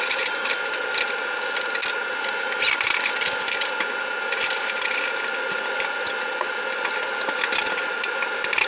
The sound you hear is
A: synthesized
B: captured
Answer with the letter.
B